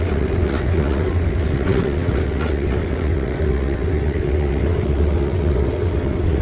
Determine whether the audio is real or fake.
fake